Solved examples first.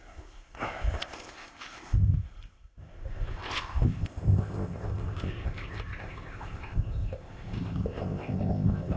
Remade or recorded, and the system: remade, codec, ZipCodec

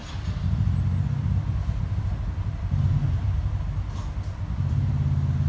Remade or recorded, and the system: recorded